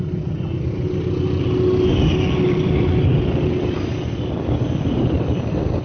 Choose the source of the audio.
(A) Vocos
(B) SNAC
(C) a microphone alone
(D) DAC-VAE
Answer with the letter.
C